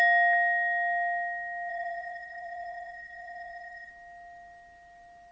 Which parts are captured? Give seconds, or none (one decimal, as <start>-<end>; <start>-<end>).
0.0-1.7; 3.9-5.3